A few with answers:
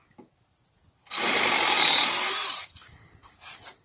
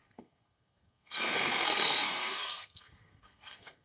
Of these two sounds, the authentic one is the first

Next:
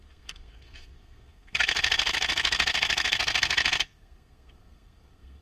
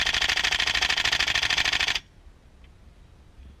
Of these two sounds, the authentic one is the second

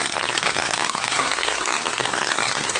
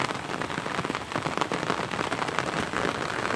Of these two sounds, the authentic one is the second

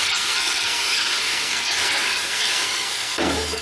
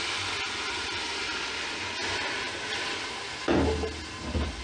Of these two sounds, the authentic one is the second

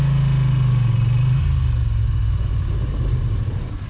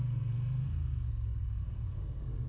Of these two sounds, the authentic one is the first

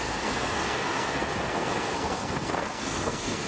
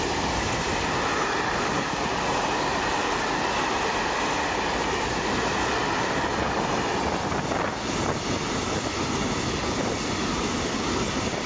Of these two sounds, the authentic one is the second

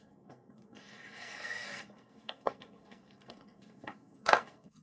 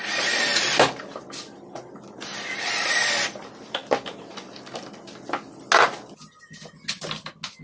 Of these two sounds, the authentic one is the second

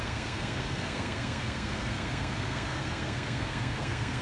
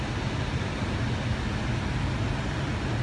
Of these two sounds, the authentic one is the second